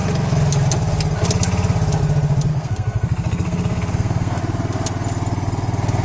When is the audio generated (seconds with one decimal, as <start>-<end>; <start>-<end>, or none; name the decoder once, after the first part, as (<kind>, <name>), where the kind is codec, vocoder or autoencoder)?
2.5-4.4 (codec, SNAC)